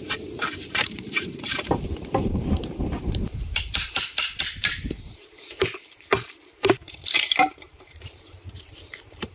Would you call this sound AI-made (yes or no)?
yes